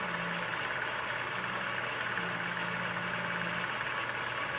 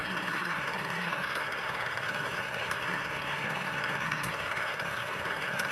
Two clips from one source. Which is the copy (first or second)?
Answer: second